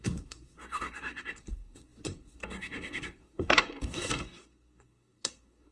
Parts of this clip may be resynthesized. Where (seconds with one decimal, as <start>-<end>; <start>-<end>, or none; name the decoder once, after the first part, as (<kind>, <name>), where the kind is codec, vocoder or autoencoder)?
0.0-5.7 (codec, SNAC)